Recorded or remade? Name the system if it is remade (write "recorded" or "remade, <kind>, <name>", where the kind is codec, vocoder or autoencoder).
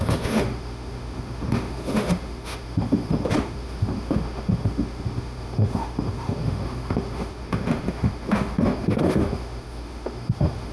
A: remade, autoencoder, DAC-VAE